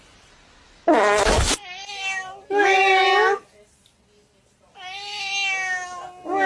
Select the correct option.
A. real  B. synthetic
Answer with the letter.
A